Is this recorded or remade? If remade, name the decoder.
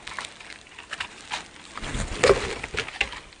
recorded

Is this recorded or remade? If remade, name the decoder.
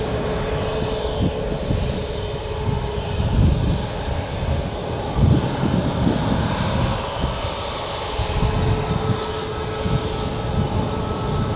recorded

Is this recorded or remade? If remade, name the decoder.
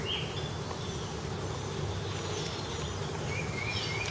recorded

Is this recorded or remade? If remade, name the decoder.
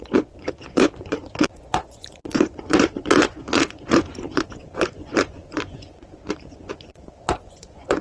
remade, vocoder, Vocos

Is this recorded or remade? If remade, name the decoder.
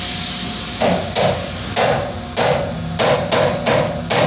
recorded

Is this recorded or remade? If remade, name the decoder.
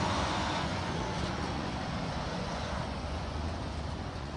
remade, vocoder, Vocos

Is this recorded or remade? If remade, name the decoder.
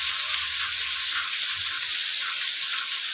recorded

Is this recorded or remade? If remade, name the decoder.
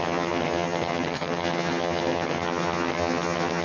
remade, vocoder, HiFi-GAN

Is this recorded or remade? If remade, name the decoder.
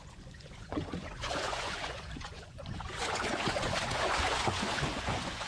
remade, vocoder, Vocos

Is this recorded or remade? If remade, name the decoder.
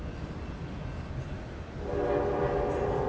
recorded